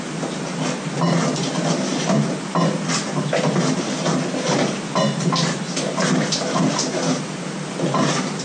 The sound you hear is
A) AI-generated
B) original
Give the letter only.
B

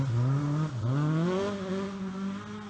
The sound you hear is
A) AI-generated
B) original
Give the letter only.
B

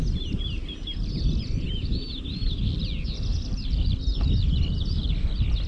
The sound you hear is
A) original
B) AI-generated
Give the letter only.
A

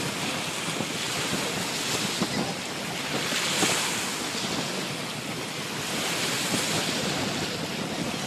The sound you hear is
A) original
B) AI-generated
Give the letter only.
A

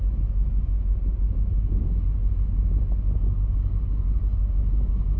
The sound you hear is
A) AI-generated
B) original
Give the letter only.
B